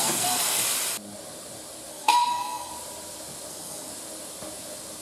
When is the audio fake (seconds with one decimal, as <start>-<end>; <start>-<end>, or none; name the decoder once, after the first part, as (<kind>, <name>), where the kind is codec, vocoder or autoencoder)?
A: 0.0-0.6 (codec, SNAC); 1.9-2.7; 3.5-3.9